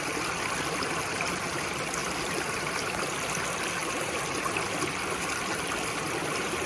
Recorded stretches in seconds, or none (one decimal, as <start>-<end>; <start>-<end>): 0.0-6.7